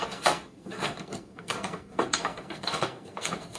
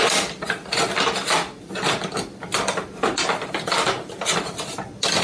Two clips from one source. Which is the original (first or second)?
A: second